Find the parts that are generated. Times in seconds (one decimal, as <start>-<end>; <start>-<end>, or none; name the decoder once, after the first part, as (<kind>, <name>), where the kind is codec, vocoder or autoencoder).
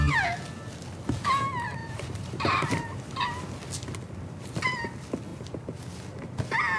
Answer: 1.8-3.3 (vocoder, BigVGAN v2); 5.3-5.8